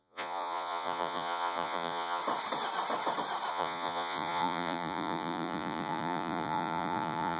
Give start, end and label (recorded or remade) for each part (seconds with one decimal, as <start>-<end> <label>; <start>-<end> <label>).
0.0-2.2 remade; 2.2-3.5 recorded; 3.5-7.4 remade